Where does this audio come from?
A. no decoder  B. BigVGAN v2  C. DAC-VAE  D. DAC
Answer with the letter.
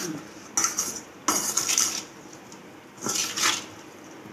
A